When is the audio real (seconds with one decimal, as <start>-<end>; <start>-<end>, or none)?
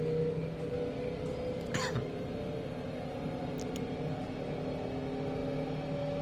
0.0-6.2